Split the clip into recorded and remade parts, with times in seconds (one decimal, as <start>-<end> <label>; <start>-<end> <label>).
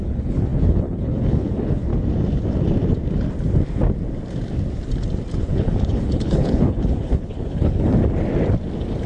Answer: 0.0-1.9 remade; 1.9-5.4 recorded; 5.4-8.0 remade; 8.0-9.1 recorded